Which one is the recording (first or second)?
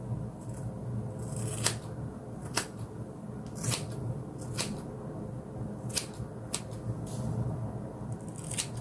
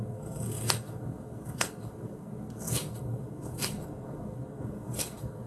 first